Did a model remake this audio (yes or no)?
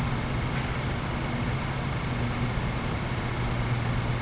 no